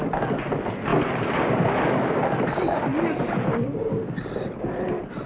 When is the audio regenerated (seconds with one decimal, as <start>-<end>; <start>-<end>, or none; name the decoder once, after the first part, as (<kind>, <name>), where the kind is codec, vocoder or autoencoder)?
none